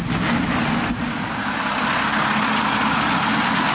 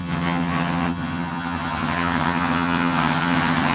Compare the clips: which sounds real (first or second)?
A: first